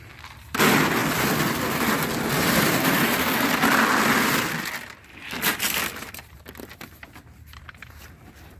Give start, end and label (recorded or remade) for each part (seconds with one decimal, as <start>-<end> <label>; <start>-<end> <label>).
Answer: 0.0-8.6 recorded